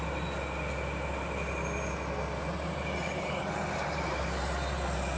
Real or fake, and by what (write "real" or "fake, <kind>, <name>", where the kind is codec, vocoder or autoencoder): real